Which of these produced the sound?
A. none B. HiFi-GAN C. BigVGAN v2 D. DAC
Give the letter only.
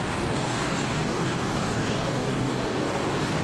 D